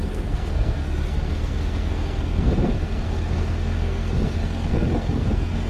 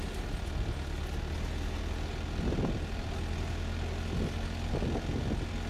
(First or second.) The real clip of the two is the second